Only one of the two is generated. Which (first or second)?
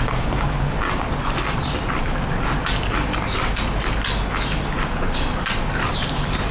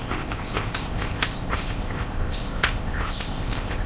second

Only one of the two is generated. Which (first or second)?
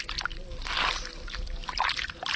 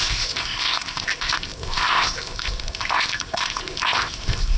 second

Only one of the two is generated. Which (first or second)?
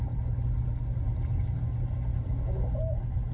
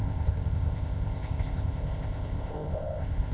second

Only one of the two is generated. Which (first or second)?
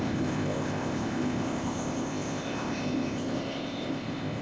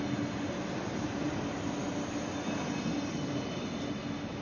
first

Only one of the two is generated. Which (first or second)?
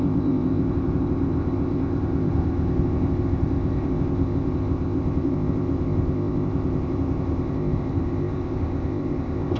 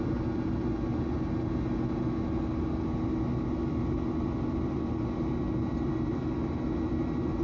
first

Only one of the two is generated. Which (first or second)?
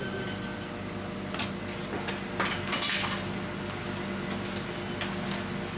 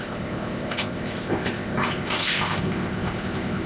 second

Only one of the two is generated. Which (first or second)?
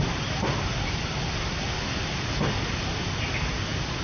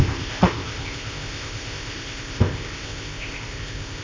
second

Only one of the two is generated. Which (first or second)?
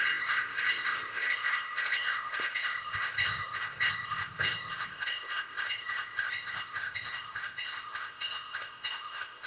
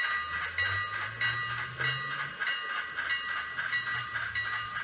first